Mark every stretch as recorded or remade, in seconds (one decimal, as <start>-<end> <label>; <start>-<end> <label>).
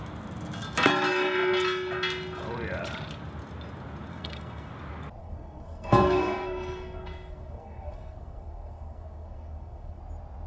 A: 0.0-4.1 recorded; 4.1-4.7 remade; 4.7-5.2 recorded; 5.2-10.0 remade; 10.0-10.5 recorded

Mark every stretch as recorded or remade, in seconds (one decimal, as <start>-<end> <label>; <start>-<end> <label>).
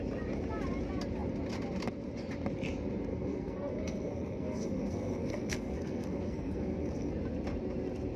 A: 0.0-3.1 recorded; 3.1-7.1 remade; 7.1-8.2 recorded